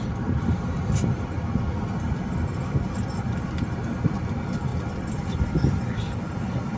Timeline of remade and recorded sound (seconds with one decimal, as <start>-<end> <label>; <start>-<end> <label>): 0.0-6.8 recorded